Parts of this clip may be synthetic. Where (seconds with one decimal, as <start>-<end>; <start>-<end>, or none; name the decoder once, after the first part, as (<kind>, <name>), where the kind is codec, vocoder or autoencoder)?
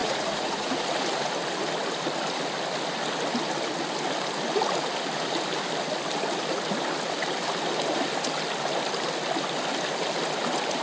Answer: 0.0-0.8 (vocoder, Vocos)